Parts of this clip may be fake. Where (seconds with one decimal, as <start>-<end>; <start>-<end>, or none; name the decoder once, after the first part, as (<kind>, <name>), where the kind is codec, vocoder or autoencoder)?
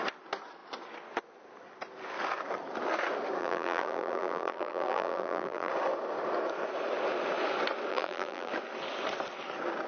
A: 3.4-5.7 (vocoder, BigVGAN v2); 7.9-8.5